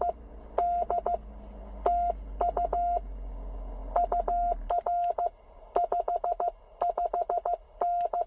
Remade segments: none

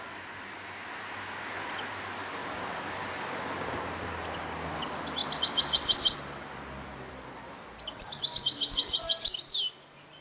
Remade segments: 5.2-7.5 (vocoder, BigVGAN v2)

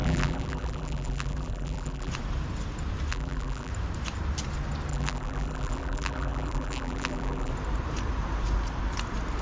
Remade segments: 0.0-2.1 (vocoder, BigVGAN v2); 3.1-3.7; 4.9-7.5